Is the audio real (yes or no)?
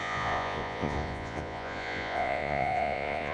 no